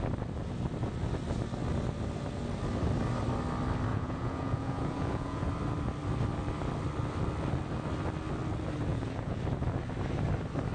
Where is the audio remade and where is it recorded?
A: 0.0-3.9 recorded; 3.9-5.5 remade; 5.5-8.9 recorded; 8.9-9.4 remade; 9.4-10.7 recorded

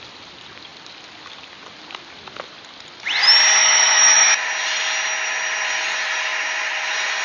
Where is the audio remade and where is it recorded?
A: 0.0-3.6 recorded; 3.6-4.3 remade; 4.3-7.2 recorded

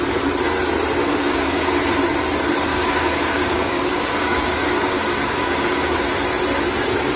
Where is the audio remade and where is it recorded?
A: 0.0-1.0 recorded; 1.0-1.8 remade; 1.8-2.7 recorded; 2.7-6.0 remade; 6.0-7.2 recorded

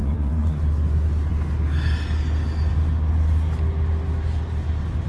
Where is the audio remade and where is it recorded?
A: 0.0-0.6 remade; 0.6-5.1 recorded

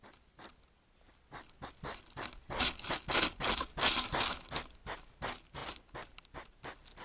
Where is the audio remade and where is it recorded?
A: 0.0-7.0 recorded

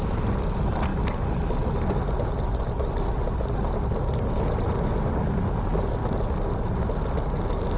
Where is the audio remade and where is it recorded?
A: 0.0-7.8 recorded

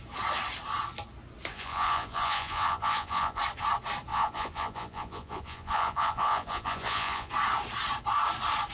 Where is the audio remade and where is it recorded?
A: 0.0-1.5 recorded; 1.5-3.4 remade; 3.4-4.1 recorded; 4.1-7.3 remade; 7.3-8.7 recorded